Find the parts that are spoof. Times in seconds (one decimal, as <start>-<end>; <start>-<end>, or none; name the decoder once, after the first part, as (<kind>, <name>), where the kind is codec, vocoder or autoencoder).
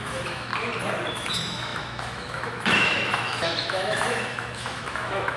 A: 0.0-0.5 (autoencoder, DAC-VAE); 1.1-5.4